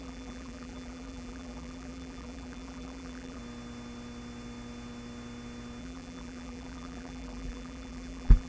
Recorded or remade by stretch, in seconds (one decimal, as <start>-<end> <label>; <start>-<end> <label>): 0.0-3.4 remade; 3.4-5.8 recorded; 5.8-8.5 remade